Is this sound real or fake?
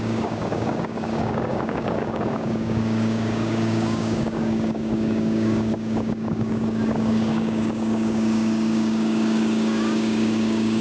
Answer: fake